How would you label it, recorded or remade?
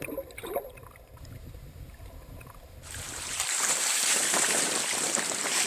remade